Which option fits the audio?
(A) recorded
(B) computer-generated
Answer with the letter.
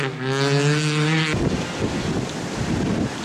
A